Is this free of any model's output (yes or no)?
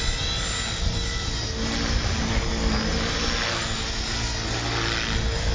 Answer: yes